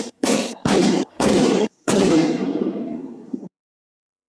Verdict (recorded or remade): remade